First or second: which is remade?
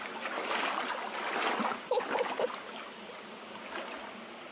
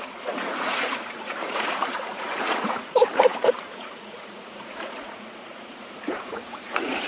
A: second